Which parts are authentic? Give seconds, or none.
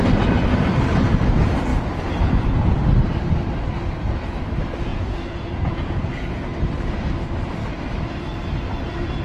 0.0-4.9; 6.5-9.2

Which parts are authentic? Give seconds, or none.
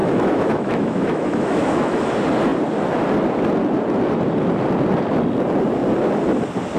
2.1-6.8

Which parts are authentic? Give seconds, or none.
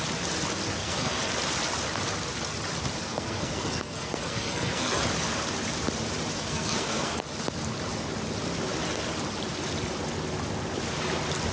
0.0-0.8; 1.3-3.0; 5.1-6.4; 7.2-11.5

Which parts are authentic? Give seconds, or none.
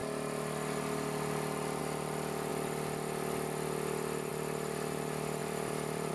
0.0-5.4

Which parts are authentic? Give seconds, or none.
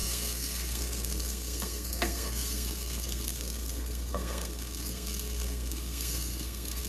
none